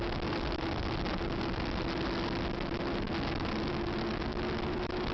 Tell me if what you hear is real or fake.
real